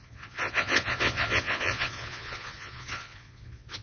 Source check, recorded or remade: remade